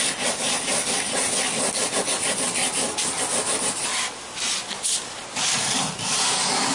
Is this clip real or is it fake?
real